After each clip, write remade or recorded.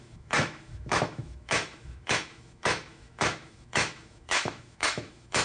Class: remade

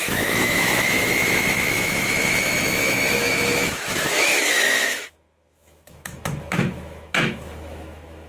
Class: remade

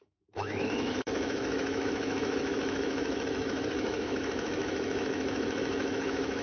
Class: remade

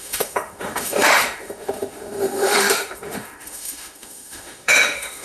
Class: remade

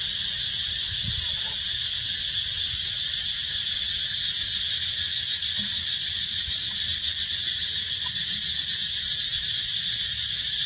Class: recorded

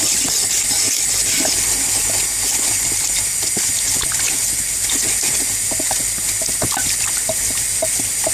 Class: recorded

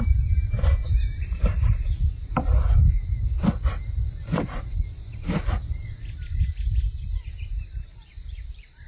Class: recorded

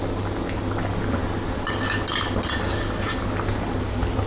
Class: recorded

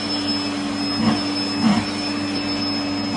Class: recorded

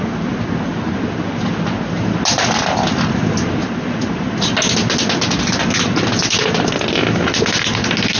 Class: recorded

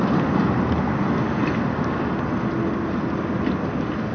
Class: recorded